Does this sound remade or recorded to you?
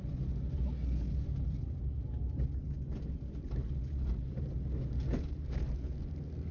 recorded